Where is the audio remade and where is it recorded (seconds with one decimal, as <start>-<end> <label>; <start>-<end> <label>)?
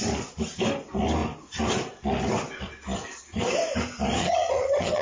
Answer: 0.0-4.2 recorded; 4.2-5.0 remade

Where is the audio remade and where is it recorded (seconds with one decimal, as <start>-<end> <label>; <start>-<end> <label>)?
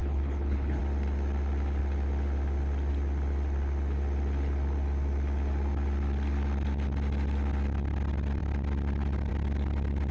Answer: 0.0-0.8 remade; 0.8-10.1 recorded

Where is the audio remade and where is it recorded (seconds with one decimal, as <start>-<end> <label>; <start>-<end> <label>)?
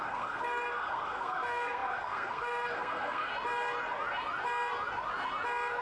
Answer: 0.0-3.3 remade; 3.3-5.8 recorded